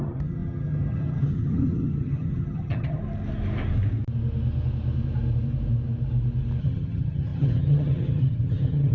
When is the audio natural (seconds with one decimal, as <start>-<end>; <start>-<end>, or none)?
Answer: 3.0-6.6